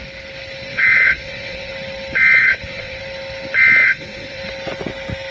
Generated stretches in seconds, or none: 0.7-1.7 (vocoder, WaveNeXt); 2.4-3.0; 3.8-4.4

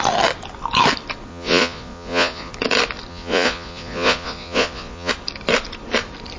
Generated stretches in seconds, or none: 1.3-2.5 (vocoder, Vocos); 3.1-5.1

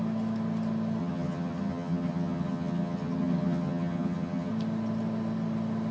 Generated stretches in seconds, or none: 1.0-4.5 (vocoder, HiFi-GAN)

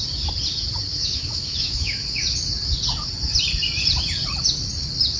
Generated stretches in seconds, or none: 0.9-2.2 (autoencoder, DAC-VAE)